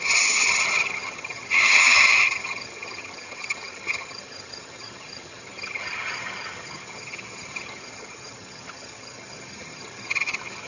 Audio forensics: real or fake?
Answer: fake